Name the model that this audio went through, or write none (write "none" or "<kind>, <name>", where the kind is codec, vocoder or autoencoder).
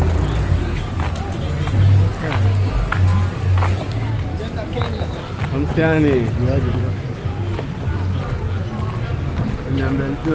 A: none